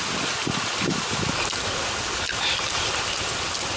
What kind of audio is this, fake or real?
real